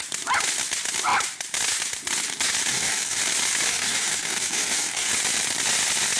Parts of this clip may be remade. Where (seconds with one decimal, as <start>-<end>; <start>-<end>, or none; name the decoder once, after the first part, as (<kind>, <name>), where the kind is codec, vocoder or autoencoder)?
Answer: 2.7-3.2 (codec, DAC); 3.7-5.1